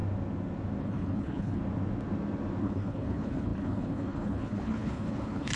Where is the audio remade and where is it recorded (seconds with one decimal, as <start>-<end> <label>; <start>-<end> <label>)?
0.0-0.8 recorded; 0.8-1.6 remade; 1.6-2.6 recorded; 2.6-5.6 remade